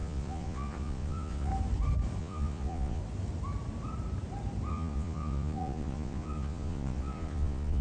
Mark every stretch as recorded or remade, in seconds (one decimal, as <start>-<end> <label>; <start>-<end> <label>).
0.0-1.5 remade; 1.5-2.2 recorded; 2.2-3.0 remade; 3.0-4.7 recorded; 4.7-7.8 remade